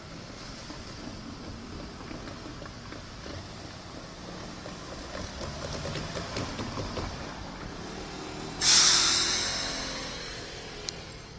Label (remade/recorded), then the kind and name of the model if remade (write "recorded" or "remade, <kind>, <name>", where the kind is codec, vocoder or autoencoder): recorded